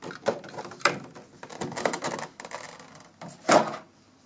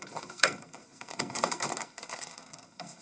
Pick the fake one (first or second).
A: second